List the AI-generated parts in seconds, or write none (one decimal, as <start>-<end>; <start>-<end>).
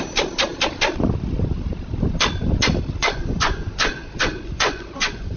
3.0-5.4